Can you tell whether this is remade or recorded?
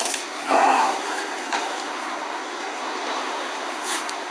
remade